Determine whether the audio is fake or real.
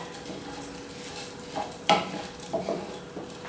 fake